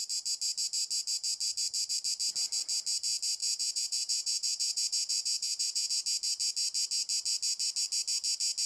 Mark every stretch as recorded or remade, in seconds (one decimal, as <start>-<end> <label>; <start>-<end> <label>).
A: 0.0-3.4 recorded; 3.4-5.9 remade; 5.9-8.7 recorded